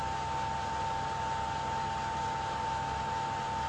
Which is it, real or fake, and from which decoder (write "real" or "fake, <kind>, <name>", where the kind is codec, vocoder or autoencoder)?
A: real